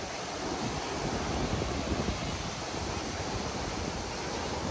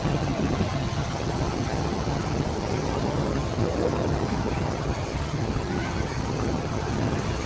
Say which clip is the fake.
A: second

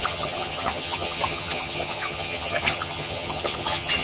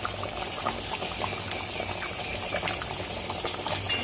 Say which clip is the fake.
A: first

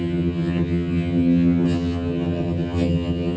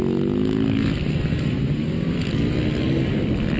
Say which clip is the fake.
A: first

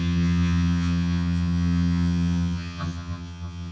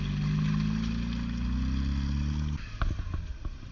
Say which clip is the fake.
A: first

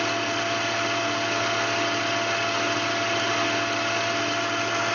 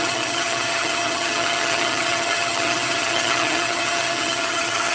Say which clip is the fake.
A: second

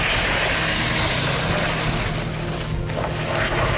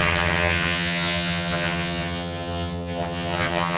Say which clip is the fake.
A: second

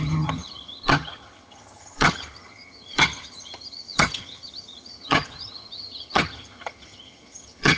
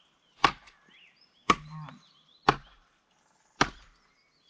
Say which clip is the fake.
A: first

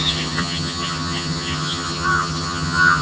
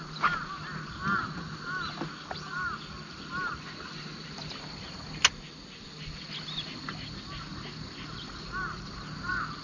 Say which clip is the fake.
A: first